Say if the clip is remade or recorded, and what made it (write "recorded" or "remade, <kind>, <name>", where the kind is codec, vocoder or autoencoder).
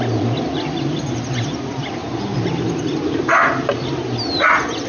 recorded